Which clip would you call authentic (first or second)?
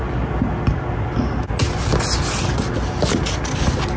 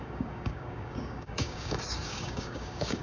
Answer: first